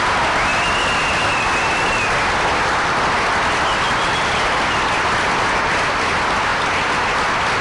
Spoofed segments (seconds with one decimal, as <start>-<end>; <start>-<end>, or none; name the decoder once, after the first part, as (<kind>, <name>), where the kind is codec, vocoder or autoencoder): none